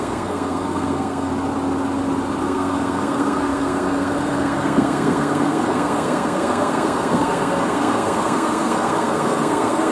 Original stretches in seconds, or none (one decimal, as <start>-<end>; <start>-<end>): 1.3-2.4

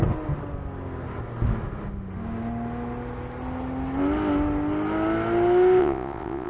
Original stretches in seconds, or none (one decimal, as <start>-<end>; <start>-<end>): 0.0-5.8

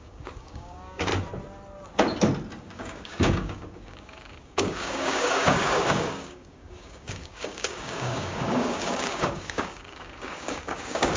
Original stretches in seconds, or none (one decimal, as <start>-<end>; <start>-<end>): 1.1-2.6

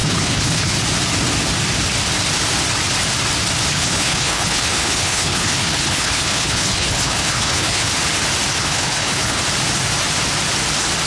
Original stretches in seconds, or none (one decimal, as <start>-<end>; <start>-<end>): 0.8-3.7; 7.9-8.5; 9.4-11.1